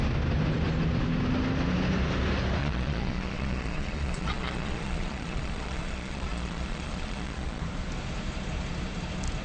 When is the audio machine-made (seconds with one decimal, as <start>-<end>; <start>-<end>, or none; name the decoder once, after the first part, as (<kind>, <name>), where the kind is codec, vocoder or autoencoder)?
2.6-7.6 (vocoder, Vocos)